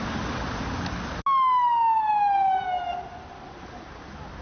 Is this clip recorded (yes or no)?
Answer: yes